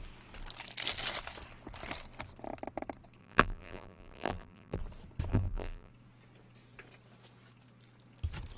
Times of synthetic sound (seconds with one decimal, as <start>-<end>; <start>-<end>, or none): 3.2-4.8; 5.3-5.9